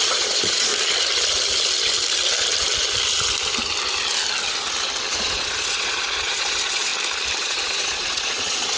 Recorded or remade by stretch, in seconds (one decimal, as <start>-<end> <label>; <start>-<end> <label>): 0.0-0.7 remade; 0.7-5.1 recorded; 5.1-6.9 remade; 6.9-7.4 recorded; 7.4-8.8 remade